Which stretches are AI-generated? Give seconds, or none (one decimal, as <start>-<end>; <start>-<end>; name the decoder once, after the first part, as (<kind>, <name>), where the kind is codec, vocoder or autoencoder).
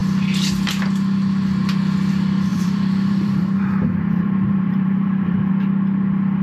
2.5-5.5 (vocoder, BigVGAN v2)